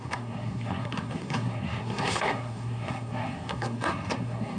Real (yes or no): no